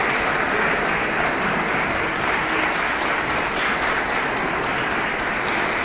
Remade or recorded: recorded